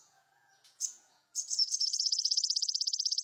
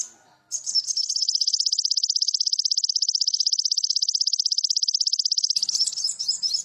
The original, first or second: second